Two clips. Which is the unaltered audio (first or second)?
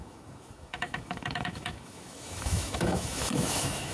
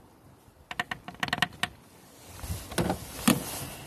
second